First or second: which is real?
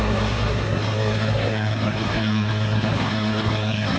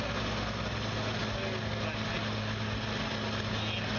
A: second